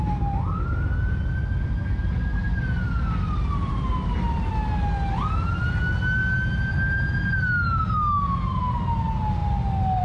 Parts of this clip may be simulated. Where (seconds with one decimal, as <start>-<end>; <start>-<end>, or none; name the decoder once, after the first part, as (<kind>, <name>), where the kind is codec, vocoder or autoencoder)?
none